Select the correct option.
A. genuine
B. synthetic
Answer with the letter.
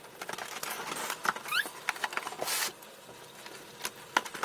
A